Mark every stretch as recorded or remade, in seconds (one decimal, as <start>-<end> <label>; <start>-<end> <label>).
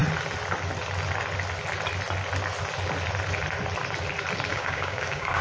0.0-4.5 recorded; 4.5-5.4 remade